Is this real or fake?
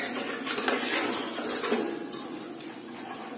fake